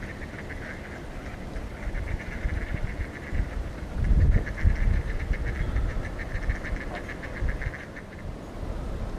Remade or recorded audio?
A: recorded